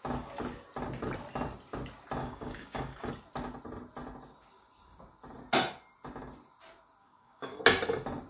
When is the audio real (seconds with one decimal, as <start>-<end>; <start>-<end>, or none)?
0.0-2.2; 3.1-7.0; 7.6-8.3